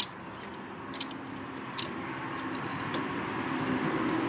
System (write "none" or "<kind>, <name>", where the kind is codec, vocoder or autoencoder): none